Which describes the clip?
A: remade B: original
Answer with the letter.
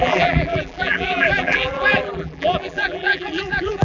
A